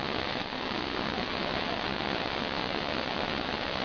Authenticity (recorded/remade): remade